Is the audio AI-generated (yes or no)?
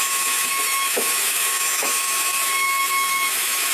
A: yes